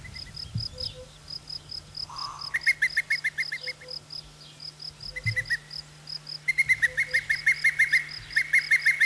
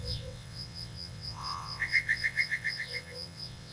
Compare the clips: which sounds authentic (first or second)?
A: first